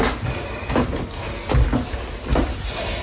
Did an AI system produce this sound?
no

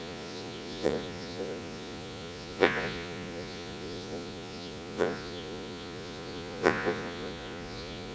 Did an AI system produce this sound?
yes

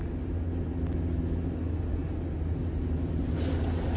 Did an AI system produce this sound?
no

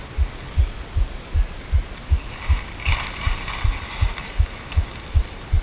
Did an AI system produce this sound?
no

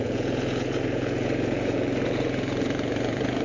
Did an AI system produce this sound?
yes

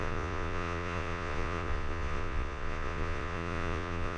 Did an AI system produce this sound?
yes